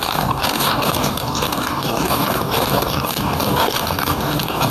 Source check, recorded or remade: remade